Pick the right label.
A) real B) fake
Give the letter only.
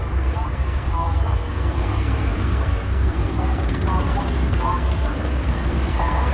B